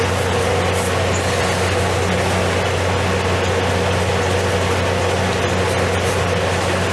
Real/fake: real